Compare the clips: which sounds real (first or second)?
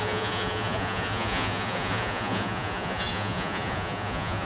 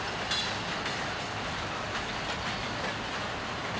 second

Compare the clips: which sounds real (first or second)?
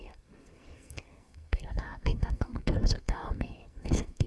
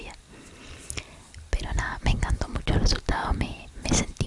second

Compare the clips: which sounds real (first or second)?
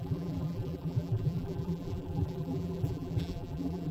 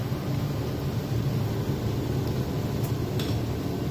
second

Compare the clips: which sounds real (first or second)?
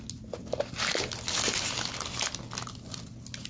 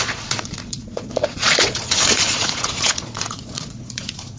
first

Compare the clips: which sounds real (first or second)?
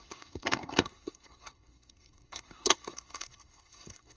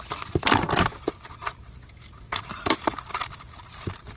second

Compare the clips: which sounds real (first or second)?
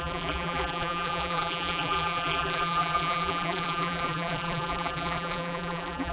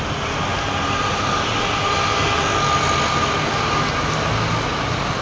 second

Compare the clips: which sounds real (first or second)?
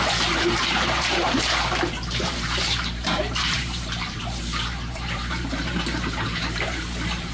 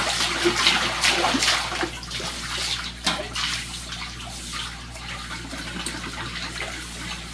second